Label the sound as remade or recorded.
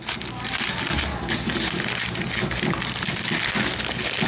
recorded